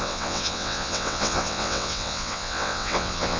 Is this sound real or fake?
fake